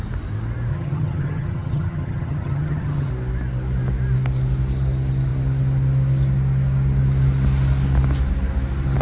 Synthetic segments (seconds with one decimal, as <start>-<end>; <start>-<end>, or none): 0.7-3.1